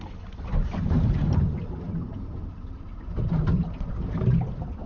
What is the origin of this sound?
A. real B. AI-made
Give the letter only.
A